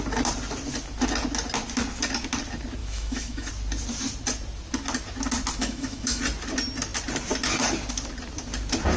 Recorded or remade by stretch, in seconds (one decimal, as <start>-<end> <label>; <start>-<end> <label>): 0.0-2.8 recorded; 2.8-3.5 remade; 3.5-5.6 recorded; 5.6-6.2 remade; 6.2-9.0 recorded